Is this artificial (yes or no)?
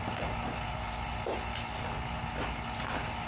no